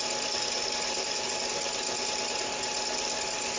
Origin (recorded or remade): recorded